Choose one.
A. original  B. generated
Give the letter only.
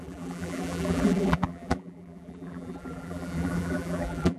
B